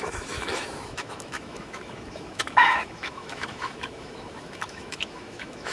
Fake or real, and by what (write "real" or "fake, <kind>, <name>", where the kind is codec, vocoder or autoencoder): fake, autoencoder, DAC-VAE